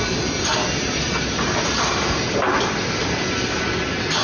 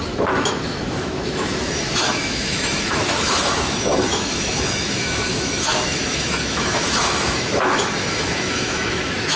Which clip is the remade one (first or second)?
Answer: second